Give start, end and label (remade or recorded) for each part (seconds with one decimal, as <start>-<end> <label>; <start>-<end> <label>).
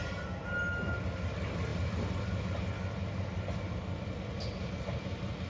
0.0-1.7 recorded; 1.7-4.8 remade; 4.8-5.5 recorded